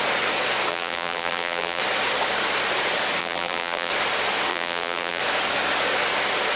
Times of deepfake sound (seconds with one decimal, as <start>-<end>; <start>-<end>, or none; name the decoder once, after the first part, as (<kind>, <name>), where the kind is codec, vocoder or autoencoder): 0.7-1.8 (vocoder, BigVGAN v2); 3.2-3.9; 4.5-5.2